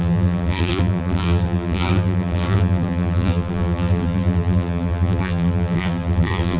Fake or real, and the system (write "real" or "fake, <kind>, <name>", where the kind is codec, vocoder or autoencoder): fake, vocoder, BigVGAN v2